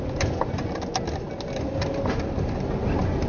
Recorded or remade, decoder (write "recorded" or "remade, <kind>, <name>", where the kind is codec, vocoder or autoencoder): recorded